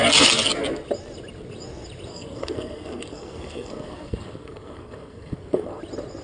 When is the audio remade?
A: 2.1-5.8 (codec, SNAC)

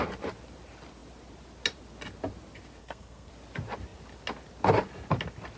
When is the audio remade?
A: 2.8-3.3 (codec, SNAC)

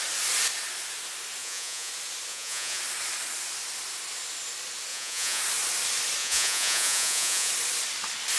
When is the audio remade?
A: 1.4-1.9 (vocoder, Vocos); 2.3-2.8; 4.9-5.4; 6.2-7.5

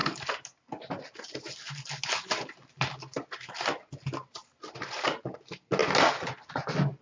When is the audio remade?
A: none

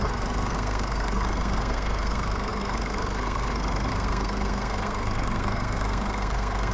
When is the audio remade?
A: 0.0-6.7 (codec, SNAC)

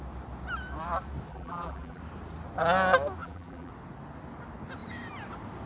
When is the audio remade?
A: 1.3-2.0 (vocoder, BigVGAN v2); 3.2-3.7

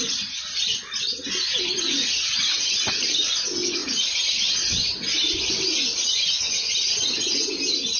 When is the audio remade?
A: none